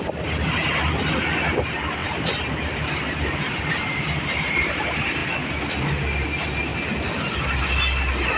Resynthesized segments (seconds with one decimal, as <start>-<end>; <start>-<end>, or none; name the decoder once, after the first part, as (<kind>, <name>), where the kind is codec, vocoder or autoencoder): 2.0-4.7 (vocoder, BigVGAN v2)